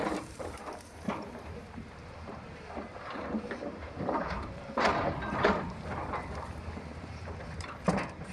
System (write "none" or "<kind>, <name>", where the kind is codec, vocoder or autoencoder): vocoder, BigVGAN v2